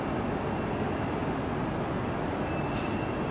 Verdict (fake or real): real